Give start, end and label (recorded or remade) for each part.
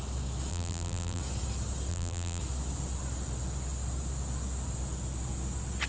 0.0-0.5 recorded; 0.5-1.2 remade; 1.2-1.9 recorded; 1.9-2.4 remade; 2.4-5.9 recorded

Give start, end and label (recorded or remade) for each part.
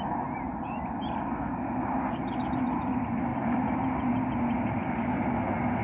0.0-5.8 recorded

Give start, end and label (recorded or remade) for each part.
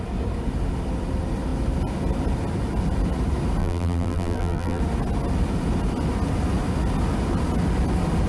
0.0-3.6 recorded; 3.6-4.8 remade; 4.8-8.3 recorded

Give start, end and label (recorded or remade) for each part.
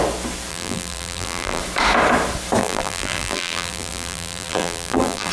0.0-0.5 recorded; 0.5-1.6 remade; 1.6-2.6 recorded; 2.6-5.3 remade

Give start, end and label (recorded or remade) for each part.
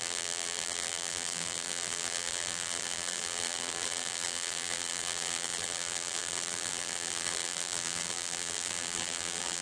0.0-9.6 remade